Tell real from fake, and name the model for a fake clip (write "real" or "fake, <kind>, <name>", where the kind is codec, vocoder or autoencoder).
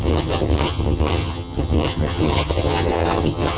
fake, vocoder, HiFi-GAN